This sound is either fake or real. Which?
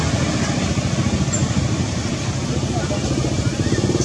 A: real